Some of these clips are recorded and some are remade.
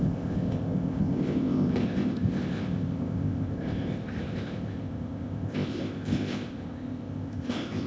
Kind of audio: remade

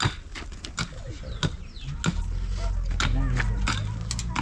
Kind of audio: recorded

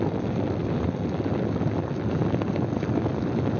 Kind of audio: recorded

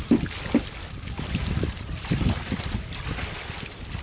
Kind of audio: recorded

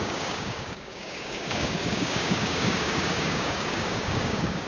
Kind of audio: remade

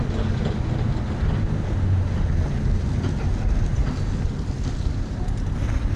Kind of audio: recorded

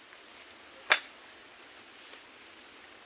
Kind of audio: recorded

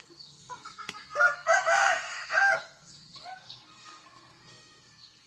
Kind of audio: remade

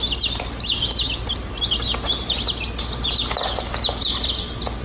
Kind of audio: recorded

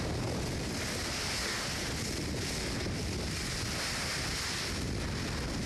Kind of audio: recorded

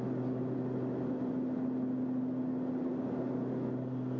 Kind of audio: recorded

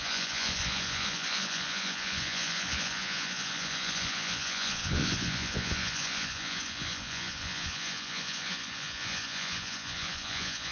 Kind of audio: remade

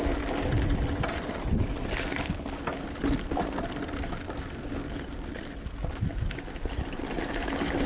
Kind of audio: recorded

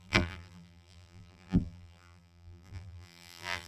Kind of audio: remade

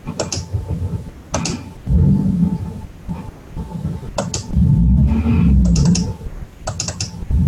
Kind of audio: recorded